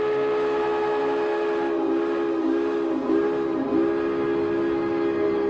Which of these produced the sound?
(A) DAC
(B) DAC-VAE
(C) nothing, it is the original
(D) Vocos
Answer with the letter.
C